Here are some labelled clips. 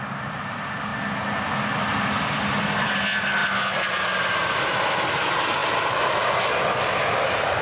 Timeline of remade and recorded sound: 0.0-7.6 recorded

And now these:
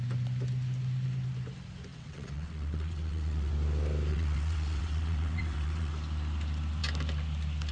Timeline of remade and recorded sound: 0.0-1.9 recorded; 1.9-3.5 remade; 3.5-4.1 recorded; 4.1-5.9 remade; 5.9-7.7 recorded